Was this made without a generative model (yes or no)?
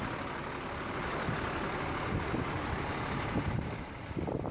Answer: yes